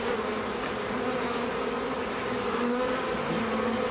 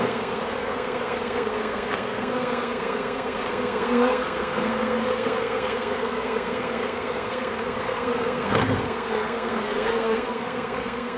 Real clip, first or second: first